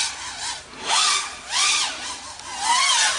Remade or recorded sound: recorded